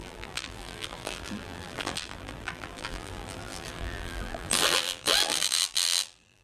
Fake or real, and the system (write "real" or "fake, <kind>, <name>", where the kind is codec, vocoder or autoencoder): fake, vocoder, BigVGAN v2